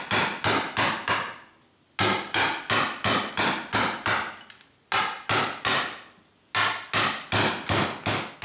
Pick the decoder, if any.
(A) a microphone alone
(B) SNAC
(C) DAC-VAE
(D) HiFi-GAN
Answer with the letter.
A